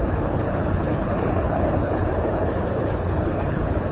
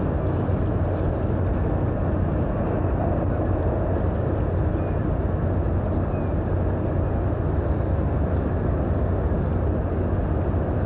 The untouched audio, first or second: second